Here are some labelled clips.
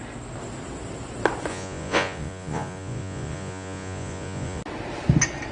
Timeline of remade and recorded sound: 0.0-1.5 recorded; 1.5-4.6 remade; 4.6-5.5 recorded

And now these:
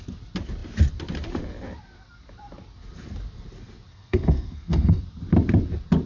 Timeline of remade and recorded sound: 0.0-3.9 recorded; 3.9-5.0 remade; 5.0-6.1 recorded

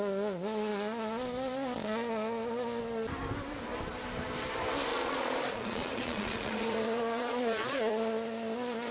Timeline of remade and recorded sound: 0.0-4.9 recorded; 4.9-7.9 remade; 7.9-8.9 recorded

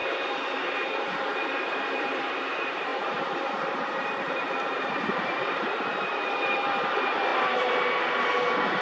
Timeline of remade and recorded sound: 0.0-8.8 remade